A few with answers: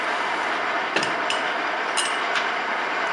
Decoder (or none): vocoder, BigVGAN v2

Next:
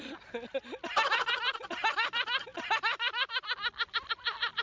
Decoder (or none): none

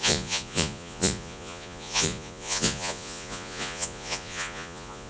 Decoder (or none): vocoder, Vocos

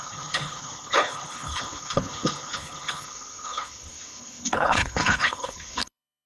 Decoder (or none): codec, HILCodec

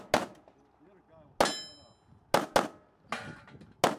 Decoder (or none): none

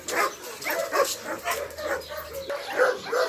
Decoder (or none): none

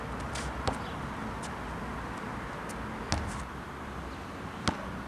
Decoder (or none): none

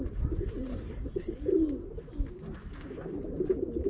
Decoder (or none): none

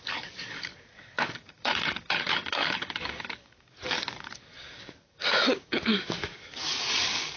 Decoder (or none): codec, DAC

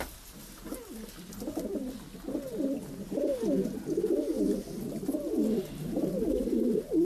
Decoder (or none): none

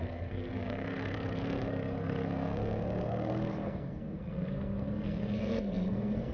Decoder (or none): codec, SNAC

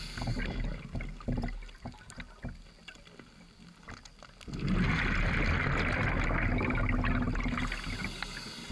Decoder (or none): none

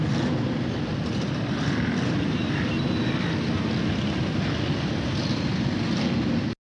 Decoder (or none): none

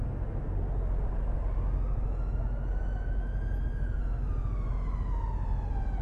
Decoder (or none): none